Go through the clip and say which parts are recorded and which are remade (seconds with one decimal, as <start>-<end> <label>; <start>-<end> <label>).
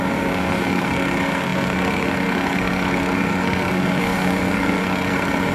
0.0-5.5 remade